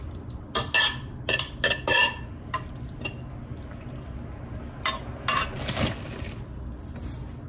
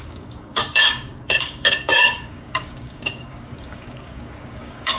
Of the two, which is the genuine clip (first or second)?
first